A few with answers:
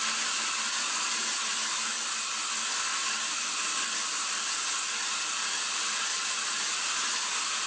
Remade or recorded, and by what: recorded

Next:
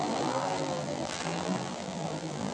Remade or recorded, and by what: remade, vocoder, BigVGAN v2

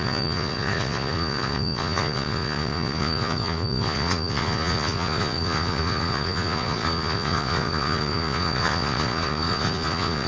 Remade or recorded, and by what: remade, vocoder, Vocos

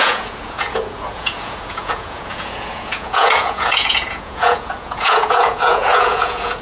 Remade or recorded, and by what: remade, vocoder, Vocos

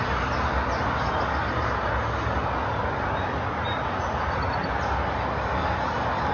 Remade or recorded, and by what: recorded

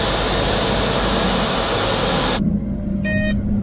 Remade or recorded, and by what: recorded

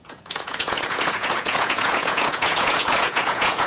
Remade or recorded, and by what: remade, vocoder, Vocos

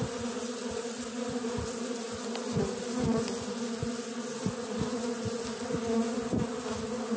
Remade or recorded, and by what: recorded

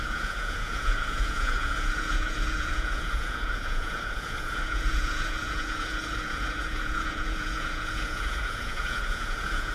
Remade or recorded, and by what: remade, vocoder, Vocos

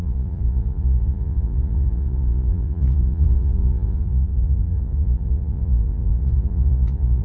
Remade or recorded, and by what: remade, vocoder, Vocos